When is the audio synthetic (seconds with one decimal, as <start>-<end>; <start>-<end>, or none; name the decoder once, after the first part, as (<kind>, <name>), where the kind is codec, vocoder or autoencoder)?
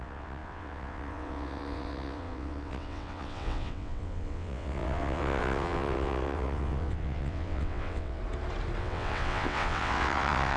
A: 0.0-8.2 (vocoder, WaveNeXt); 8.8-10.6